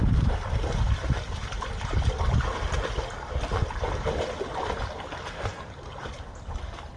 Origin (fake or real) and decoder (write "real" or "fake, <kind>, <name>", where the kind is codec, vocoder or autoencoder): real